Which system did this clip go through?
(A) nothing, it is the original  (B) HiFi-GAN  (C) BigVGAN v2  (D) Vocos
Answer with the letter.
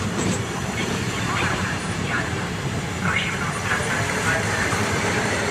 C